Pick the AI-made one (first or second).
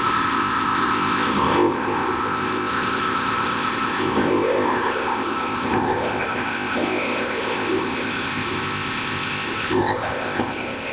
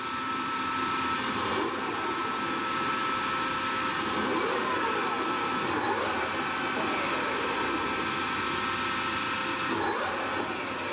first